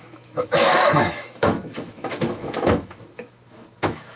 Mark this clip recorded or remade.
remade